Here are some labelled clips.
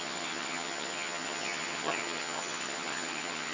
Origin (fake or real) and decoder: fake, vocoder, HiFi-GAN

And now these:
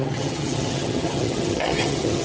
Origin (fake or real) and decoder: fake, vocoder, HiFi-GAN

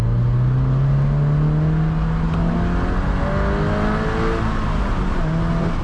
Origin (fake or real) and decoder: real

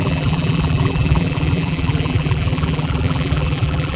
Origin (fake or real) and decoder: fake, vocoder, BigVGAN v2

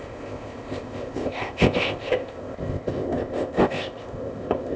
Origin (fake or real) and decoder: fake, codec, ZipCodec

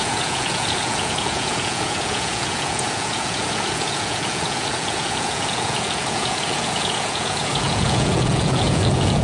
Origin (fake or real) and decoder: fake, vocoder, Vocos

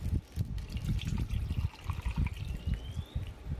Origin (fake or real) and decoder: real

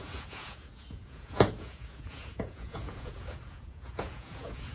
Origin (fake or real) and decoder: fake, vocoder, Vocos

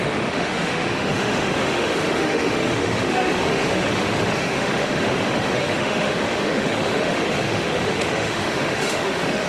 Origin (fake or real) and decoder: fake, autoencoder, DAC-VAE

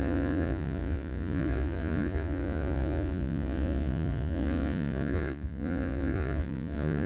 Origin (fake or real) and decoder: fake, vocoder, Vocos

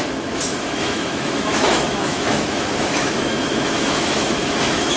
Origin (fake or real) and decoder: fake, autoencoder, DAC-VAE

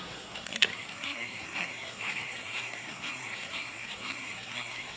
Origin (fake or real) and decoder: fake, codec, SNAC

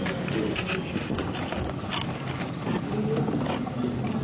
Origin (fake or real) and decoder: real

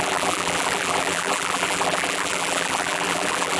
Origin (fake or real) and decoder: fake, vocoder, BigVGAN v2